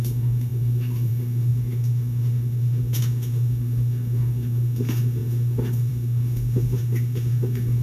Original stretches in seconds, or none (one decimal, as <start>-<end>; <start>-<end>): none